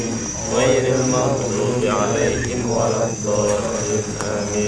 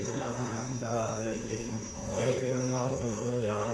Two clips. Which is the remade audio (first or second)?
second